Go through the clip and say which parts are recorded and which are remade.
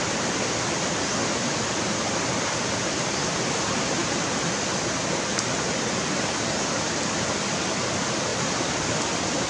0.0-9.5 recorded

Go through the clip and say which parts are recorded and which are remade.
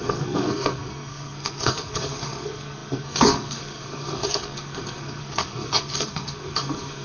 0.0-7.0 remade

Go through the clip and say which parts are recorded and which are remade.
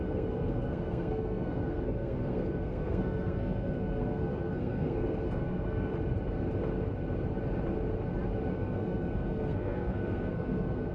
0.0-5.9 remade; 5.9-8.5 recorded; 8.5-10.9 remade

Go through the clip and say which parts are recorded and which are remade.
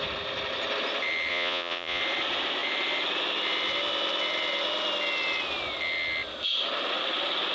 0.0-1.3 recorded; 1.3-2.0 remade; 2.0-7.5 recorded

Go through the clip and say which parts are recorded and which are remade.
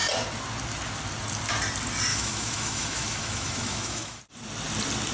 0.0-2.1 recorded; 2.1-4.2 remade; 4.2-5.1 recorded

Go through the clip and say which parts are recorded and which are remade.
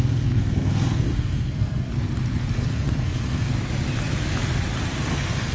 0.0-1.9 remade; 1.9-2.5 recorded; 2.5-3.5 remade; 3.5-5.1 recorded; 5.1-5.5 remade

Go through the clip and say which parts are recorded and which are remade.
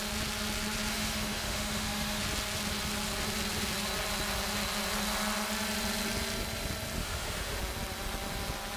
0.0-0.9 recorded; 0.9-2.2 remade; 2.2-7.0 recorded; 7.0-7.6 remade; 7.6-8.8 recorded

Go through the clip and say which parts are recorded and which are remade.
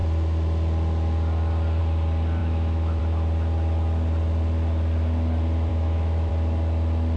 0.0-2.4 recorded; 2.4-3.0 remade; 3.0-5.7 recorded; 5.7-6.3 remade; 6.3-7.2 recorded